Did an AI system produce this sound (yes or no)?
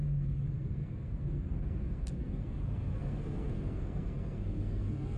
yes